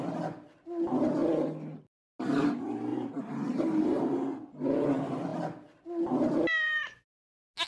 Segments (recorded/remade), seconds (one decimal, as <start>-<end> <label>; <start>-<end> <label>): 0.0-2.9 recorded; 2.9-4.0 remade; 4.0-7.7 recorded

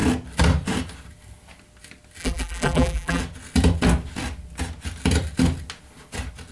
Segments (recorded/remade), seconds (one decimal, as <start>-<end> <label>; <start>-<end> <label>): 0.0-2.2 recorded; 2.2-3.2 remade; 3.2-6.5 recorded

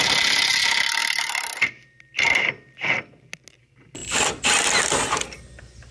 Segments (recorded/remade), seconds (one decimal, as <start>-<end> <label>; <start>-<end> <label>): 0.0-4.0 recorded; 4.0-4.7 remade; 4.7-5.9 recorded